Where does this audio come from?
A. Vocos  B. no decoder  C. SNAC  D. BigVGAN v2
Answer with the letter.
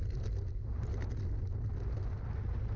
B